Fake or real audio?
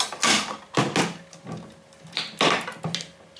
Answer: real